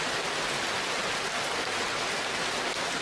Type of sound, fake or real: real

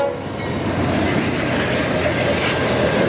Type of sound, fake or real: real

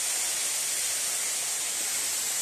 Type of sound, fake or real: real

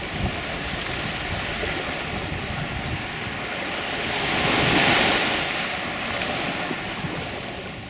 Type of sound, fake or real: real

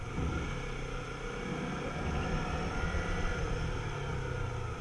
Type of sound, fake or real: real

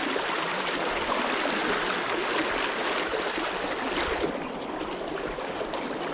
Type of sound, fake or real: real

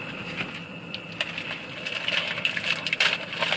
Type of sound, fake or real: real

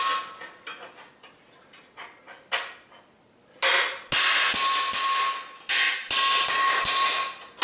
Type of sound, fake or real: real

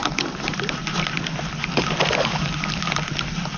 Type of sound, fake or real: real